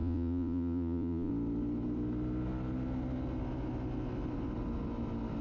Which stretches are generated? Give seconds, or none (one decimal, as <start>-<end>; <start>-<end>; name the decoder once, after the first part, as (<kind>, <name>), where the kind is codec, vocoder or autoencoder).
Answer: 0.0-1.3 (vocoder, Vocos)